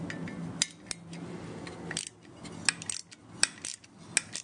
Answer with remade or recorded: recorded